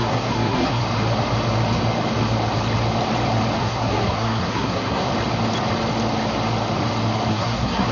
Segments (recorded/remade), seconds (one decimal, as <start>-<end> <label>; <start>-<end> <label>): 0.0-0.8 remade; 0.8-3.6 recorded; 3.6-5.1 remade; 5.1-7.3 recorded; 7.3-7.9 remade